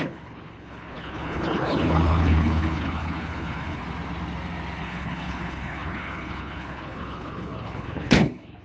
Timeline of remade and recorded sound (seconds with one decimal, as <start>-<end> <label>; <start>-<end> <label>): 0.0-3.8 remade; 3.8-4.8 recorded; 4.8-8.6 remade